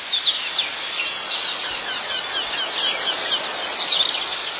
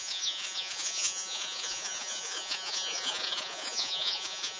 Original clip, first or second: first